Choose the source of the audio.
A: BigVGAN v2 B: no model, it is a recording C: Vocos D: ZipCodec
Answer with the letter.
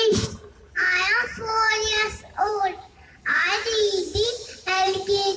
A